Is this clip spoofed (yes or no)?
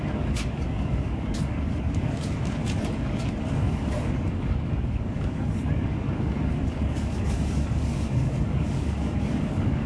yes